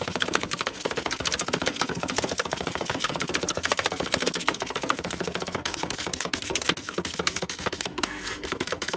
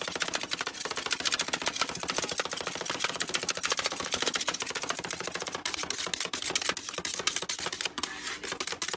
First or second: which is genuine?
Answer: second